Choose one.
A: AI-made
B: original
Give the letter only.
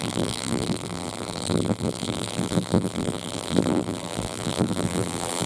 A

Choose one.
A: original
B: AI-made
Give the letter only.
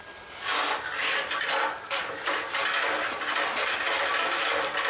A